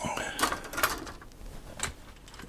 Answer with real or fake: real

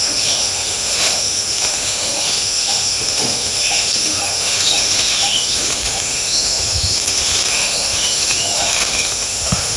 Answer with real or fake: fake